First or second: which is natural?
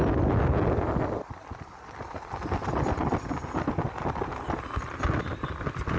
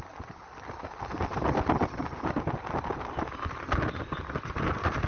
first